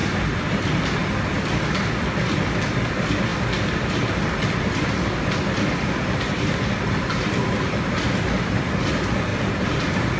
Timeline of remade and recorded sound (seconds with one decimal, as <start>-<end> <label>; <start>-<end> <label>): 0.0-0.5 remade; 0.5-1.0 recorded; 1.0-1.5 remade; 1.5-10.2 recorded